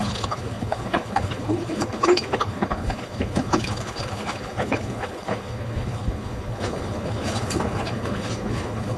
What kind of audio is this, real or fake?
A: fake